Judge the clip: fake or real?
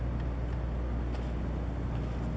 real